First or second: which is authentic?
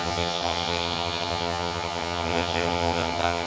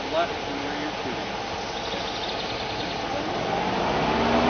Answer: second